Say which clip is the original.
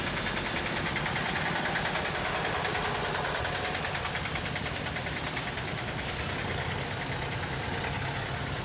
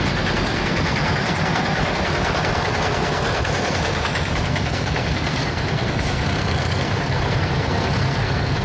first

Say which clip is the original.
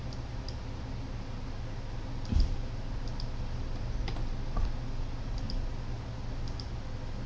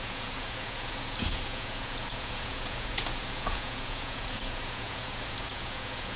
first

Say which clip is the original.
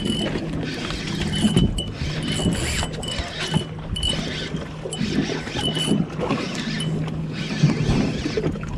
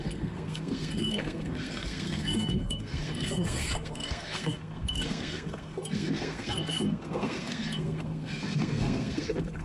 first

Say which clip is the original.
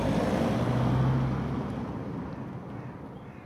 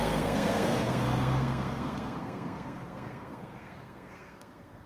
first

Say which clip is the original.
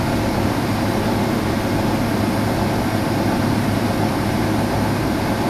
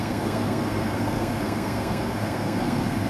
first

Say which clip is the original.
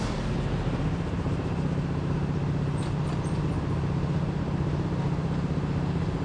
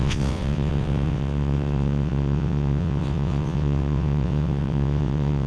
first